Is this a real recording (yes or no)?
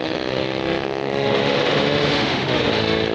no